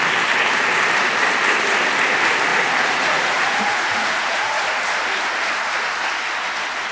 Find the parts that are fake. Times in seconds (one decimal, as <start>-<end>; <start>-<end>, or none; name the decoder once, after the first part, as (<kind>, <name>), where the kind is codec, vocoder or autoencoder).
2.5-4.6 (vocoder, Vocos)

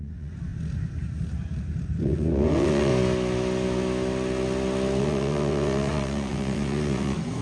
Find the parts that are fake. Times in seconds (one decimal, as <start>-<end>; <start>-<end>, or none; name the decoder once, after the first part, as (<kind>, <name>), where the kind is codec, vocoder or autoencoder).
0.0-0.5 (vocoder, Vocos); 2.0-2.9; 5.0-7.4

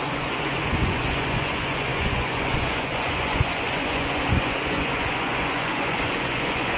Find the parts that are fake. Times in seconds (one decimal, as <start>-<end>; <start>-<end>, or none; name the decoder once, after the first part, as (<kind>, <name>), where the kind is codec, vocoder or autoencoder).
0.0-6.8 (vocoder, Vocos)